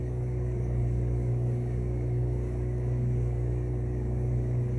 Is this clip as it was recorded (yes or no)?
no